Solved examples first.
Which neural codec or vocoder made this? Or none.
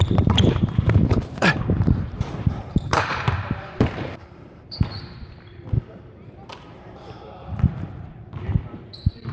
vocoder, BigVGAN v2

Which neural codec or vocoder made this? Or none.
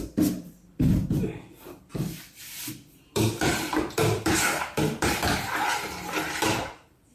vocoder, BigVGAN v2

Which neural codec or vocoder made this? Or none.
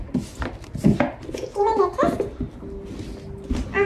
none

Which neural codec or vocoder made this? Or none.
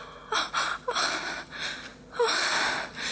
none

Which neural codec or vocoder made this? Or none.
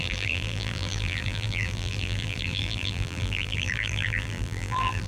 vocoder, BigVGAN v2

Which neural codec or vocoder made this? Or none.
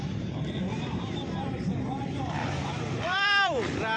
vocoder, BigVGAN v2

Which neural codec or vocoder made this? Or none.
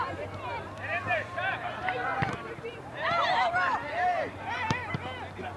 vocoder, BigVGAN v2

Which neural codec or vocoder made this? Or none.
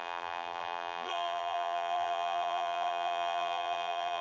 vocoder, BigVGAN v2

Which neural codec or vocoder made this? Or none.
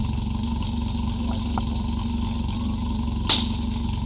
none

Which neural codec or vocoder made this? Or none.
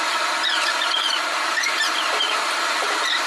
vocoder, BigVGAN v2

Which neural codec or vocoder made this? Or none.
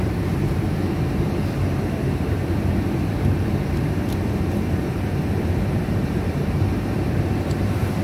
vocoder, BigVGAN v2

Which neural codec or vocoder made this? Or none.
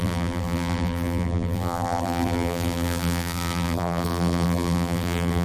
vocoder, BigVGAN v2